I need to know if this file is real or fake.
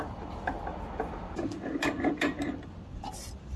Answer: real